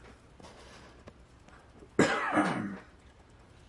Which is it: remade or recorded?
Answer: recorded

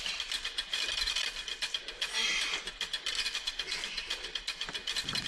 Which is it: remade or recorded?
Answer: remade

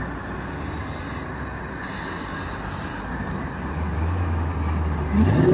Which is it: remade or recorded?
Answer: recorded